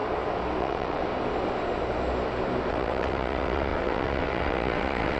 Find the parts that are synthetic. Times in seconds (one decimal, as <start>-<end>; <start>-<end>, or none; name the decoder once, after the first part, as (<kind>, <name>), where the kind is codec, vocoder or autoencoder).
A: 0.6-1.0 (vocoder, WaveNeXt); 2.7-5.2